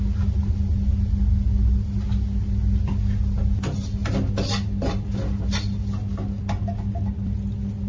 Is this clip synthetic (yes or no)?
no